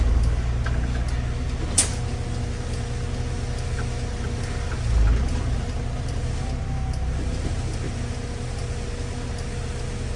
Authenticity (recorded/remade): recorded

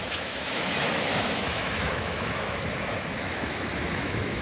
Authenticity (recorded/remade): remade